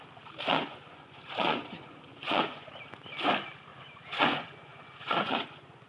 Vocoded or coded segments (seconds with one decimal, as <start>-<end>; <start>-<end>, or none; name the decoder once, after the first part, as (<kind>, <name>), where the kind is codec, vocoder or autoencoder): 0.5-2.7 (vocoder, Vocos); 3.7-5.9